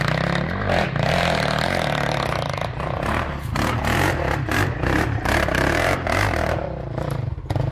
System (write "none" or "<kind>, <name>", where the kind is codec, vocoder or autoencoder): vocoder, BigVGAN v2